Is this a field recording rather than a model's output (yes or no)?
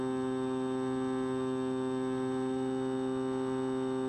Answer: yes